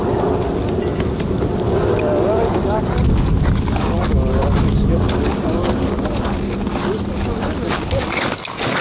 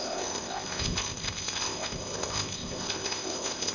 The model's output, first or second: second